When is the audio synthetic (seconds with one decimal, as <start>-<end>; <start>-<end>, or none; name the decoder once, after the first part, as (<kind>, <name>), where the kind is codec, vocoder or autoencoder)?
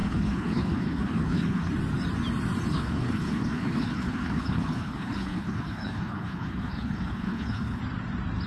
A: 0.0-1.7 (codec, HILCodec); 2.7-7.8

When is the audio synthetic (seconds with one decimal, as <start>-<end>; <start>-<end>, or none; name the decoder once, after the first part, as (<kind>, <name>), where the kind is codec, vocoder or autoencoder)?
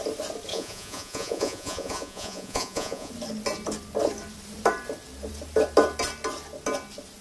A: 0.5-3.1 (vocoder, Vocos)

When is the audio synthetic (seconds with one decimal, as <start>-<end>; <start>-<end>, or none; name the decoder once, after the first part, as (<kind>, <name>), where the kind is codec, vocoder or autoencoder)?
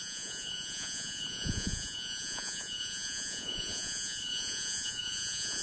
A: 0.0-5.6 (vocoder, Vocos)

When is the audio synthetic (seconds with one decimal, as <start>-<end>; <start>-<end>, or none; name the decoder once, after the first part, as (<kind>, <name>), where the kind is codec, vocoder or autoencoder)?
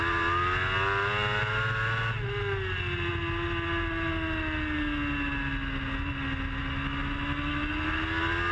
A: none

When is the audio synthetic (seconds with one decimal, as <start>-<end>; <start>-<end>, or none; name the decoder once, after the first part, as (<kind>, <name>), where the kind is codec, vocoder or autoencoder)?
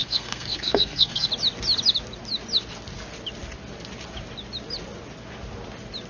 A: 0.0-1.3 (codec, SNAC)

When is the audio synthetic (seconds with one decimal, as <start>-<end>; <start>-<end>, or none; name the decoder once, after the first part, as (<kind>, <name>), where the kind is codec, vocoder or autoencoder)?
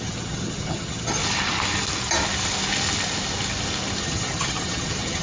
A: 0.0-1.2 (vocoder, HiFi-GAN); 4.0-5.2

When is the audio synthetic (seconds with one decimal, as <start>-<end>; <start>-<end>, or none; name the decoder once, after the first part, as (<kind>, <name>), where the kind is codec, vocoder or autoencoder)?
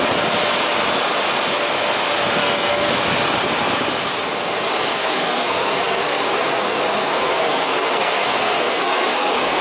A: 2.4-2.9 (codec, SNAC); 4.9-9.6